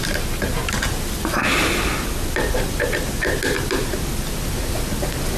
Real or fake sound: real